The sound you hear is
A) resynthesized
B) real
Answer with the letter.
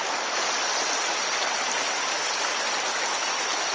B